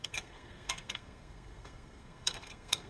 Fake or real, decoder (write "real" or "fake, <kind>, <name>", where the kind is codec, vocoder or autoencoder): fake, codec, SNAC